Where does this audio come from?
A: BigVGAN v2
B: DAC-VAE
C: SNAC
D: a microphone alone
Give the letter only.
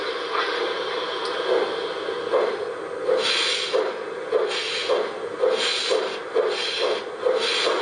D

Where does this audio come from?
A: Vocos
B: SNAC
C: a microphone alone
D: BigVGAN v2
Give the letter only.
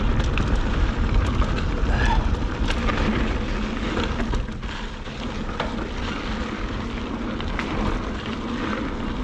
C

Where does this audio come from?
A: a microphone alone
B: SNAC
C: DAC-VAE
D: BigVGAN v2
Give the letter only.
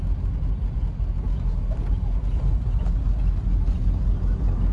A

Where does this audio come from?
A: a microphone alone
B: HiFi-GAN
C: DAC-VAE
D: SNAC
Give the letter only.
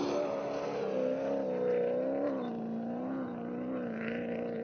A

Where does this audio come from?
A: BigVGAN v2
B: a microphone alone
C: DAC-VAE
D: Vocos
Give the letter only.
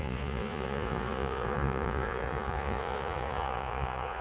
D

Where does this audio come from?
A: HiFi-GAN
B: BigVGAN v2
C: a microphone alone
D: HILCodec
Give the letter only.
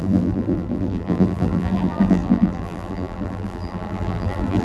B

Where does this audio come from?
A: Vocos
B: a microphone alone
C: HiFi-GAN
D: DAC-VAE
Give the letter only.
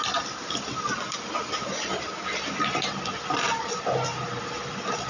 B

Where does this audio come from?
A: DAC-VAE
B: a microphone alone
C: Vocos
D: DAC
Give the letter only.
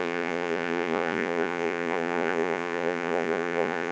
C